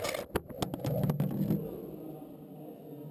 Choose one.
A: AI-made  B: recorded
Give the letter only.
B